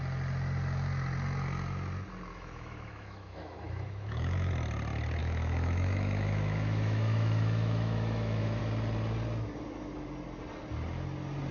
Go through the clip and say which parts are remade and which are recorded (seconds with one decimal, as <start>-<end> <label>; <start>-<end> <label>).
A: 0.0-2.3 recorded; 2.3-4.5 remade; 4.5-5.2 recorded; 5.2-8.6 remade; 8.6-11.5 recorded